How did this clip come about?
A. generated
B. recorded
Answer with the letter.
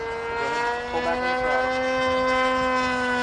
B